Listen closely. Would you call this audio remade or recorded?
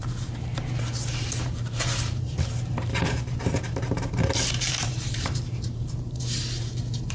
remade